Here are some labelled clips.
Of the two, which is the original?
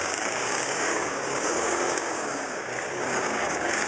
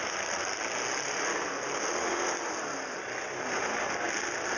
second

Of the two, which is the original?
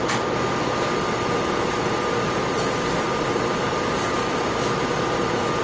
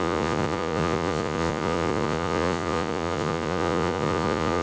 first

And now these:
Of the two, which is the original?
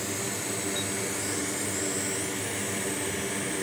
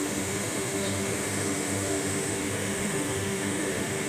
first